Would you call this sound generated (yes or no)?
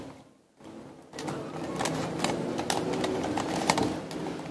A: no